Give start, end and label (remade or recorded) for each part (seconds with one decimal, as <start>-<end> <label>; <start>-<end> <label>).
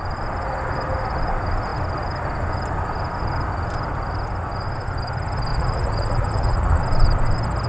0.0-5.5 recorded; 5.5-6.8 remade; 6.8-7.7 recorded